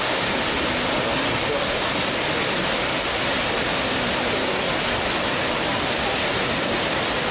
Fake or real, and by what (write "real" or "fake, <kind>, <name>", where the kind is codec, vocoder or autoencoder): real